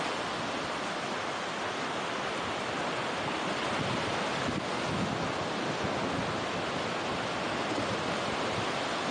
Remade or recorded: recorded